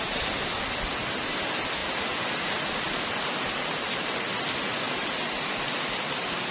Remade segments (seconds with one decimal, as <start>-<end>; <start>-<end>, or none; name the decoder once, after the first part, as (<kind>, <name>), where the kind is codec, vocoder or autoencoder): none